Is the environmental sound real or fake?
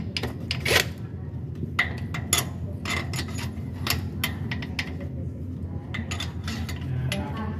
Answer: real